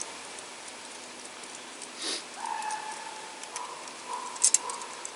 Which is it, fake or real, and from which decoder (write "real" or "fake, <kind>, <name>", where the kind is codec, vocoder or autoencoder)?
real